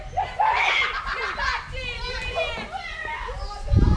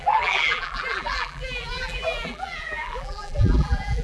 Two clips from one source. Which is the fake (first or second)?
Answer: second